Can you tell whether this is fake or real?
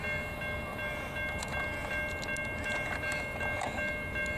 real